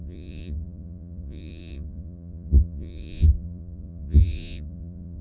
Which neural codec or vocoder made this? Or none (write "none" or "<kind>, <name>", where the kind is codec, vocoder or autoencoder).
vocoder, Vocos